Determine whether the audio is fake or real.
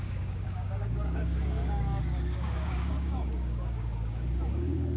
fake